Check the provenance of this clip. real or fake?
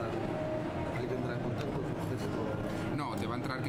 real